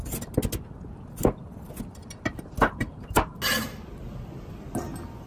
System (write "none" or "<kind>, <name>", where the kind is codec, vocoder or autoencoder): none